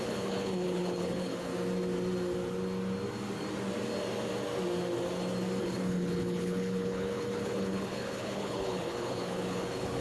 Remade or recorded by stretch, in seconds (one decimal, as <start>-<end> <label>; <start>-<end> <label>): 0.0-1.5 remade; 1.5-5.6 recorded; 5.6-10.0 remade